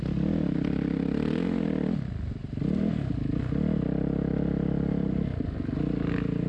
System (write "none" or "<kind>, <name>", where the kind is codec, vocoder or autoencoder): none